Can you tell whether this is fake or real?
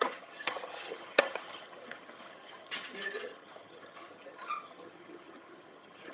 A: fake